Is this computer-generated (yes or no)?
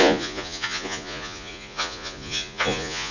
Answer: yes